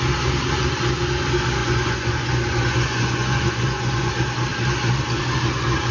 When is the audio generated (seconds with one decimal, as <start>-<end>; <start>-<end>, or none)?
1.6-4.1